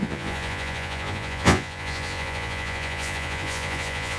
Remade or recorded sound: remade